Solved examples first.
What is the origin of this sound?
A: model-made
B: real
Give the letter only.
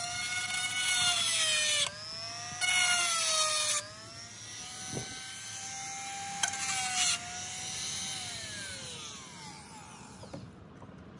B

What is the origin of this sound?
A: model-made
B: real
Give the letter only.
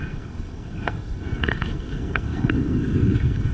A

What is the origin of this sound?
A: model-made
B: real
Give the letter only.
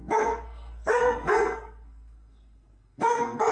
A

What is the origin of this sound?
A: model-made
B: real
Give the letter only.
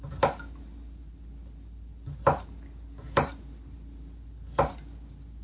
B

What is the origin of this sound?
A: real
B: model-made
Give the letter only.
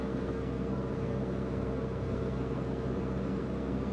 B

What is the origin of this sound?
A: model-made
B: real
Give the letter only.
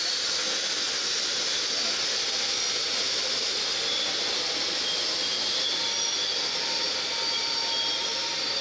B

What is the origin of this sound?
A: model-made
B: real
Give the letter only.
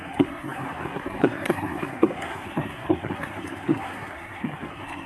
A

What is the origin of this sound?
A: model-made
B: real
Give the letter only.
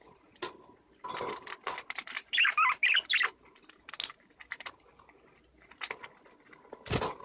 B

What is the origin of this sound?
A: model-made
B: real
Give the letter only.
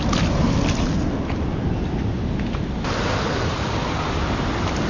B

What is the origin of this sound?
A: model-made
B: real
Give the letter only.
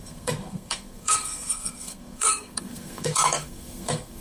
A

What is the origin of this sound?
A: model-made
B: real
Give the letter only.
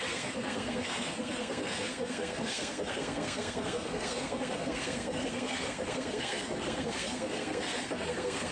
A